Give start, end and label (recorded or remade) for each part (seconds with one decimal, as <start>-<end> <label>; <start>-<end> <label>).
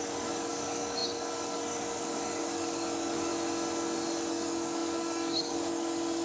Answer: 0.0-3.3 remade; 3.3-4.3 recorded; 4.3-6.2 remade